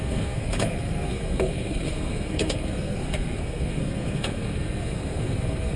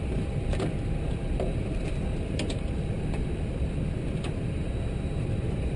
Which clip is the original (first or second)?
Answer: second